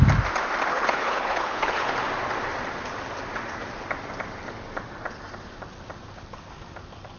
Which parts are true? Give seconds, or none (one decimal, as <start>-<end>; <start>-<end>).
0.0-0.7; 1.9-7.2